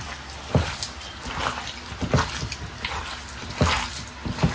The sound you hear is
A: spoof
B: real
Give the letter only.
B